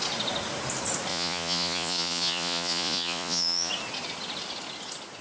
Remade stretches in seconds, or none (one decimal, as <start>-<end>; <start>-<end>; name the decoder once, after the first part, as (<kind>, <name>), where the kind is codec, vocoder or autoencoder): 1.1-3.7 (vocoder, Vocos)